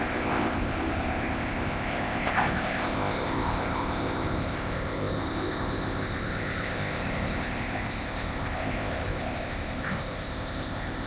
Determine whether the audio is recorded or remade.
remade